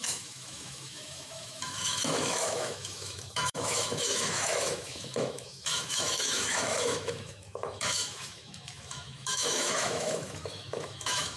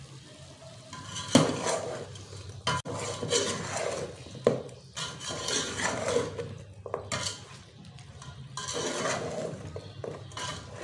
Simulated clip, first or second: first